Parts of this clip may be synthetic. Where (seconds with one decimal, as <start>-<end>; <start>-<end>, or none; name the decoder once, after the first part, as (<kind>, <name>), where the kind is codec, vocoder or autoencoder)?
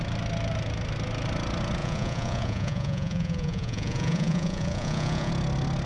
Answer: 1.8-5.3 (vocoder, Vocos)